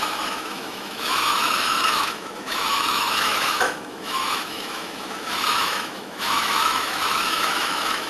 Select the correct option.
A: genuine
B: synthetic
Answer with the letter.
B